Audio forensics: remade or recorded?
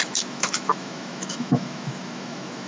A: remade